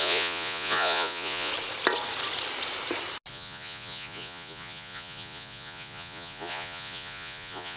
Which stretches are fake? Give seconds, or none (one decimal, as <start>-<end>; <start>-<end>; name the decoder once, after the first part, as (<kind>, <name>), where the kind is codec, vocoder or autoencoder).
0.0-1.5 (vocoder, Vocos); 3.3-7.8